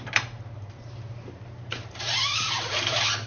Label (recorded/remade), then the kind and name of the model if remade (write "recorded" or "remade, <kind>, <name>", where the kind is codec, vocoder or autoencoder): remade, vocoder, BigVGAN v2